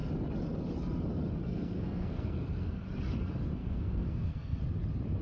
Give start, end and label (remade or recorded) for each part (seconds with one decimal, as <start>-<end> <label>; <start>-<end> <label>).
0.0-1.5 recorded; 1.5-2.8 remade; 2.8-3.6 recorded; 3.6-4.6 remade; 4.6-5.2 recorded